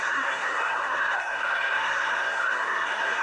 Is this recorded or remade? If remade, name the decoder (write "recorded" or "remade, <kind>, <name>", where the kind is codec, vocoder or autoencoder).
remade, codec, SNAC